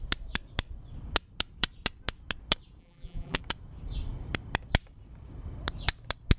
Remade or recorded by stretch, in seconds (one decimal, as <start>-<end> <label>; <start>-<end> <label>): 0.0-2.8 recorded; 2.8-3.4 remade; 3.4-6.4 recorded